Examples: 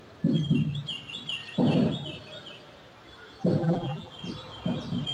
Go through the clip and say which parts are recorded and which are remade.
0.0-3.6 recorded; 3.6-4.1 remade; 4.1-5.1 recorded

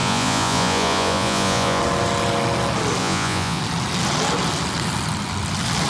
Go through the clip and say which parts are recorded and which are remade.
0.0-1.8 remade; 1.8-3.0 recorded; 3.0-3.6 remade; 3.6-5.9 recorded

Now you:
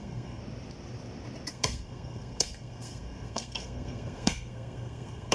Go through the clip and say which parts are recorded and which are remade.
0.0-0.4 remade; 0.4-1.5 recorded; 1.5-5.3 remade

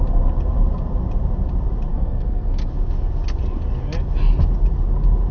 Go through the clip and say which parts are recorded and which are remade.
0.0-1.9 recorded; 1.9-2.7 remade; 2.7-5.3 recorded

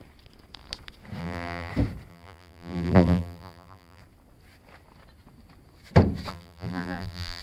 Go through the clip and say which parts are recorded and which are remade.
0.0-1.2 recorded; 1.2-1.7 remade; 1.7-2.1 recorded; 2.1-4.0 remade; 4.0-6.3 recorded; 6.3-7.4 remade

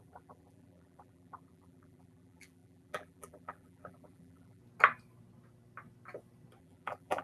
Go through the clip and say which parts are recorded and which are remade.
0.0-4.6 remade; 4.6-6.6 recorded; 6.6-7.2 remade

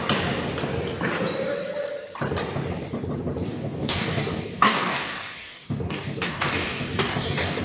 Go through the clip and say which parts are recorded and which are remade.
0.0-3.5 recorded; 3.5-7.6 remade